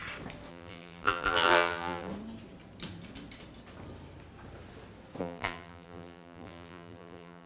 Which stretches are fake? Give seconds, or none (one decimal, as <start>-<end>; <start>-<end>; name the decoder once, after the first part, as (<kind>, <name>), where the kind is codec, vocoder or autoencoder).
0.5-2.1 (vocoder, BigVGAN v2); 5.2-7.5